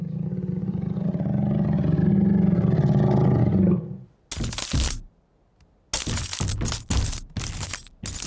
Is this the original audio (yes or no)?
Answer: yes